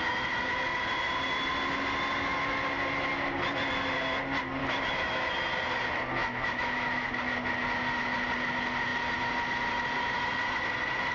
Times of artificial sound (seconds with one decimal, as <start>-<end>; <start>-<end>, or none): 4.6-5.3; 6.2-7.1